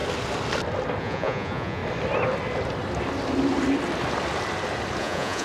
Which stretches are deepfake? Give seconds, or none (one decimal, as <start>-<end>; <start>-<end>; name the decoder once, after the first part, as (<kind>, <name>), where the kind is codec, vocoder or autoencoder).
1.0-1.8 (vocoder, Vocos); 5.0-5.4